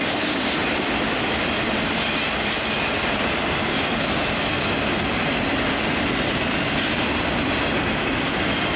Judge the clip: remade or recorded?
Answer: recorded